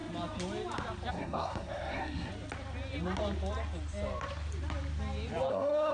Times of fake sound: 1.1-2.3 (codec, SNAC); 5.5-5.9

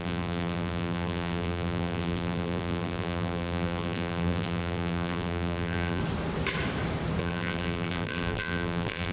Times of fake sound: 0.0-6.0 (vocoder, BigVGAN v2); 7.2-9.1

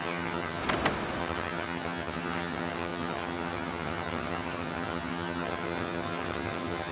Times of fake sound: 0.0-0.6 (vocoder, HiFi-GAN); 1.2-6.9

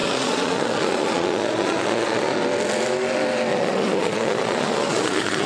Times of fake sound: 0.0-2.4 (vocoder, Vocos); 3.5-5.5

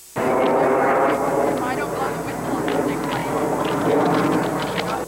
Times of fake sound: none